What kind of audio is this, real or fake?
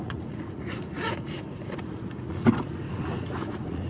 fake